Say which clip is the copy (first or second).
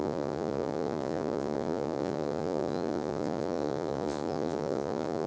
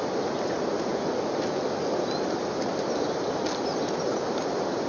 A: first